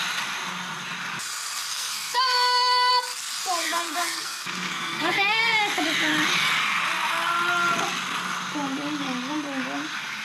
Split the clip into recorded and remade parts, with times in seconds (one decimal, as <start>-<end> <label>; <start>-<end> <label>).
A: 0.0-1.7 recorded; 1.7-2.9 remade; 2.9-3.6 recorded; 3.6-5.6 remade; 5.6-10.2 recorded